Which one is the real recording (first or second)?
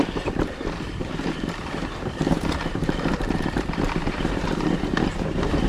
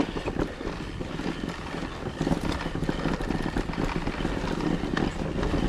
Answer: second